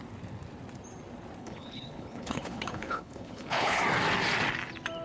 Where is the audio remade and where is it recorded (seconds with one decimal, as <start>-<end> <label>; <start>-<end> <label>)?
0.0-1.4 recorded; 1.4-3.8 remade; 3.8-5.0 recorded